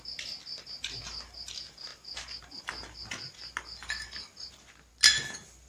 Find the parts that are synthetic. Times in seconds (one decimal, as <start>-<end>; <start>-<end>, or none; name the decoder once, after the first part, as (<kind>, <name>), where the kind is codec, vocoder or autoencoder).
none